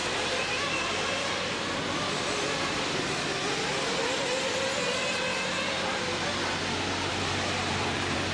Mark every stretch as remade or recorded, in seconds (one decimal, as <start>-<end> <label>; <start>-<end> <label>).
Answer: 0.0-3.4 remade; 3.4-7.1 recorded; 7.1-8.3 remade